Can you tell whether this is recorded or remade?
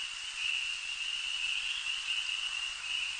recorded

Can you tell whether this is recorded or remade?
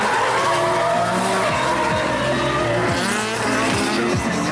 recorded